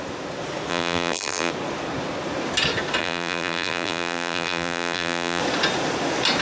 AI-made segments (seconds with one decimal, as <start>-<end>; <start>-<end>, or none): 0.7-1.5; 3.0-5.4